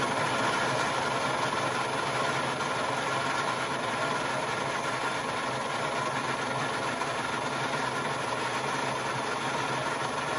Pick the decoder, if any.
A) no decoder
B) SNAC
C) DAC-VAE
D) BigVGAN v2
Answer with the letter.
A